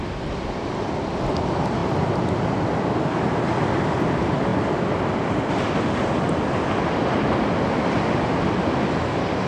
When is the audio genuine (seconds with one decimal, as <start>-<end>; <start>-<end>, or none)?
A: 1.8-3.6